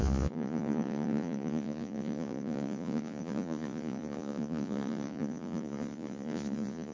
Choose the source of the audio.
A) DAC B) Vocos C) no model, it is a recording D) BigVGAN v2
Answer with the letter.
B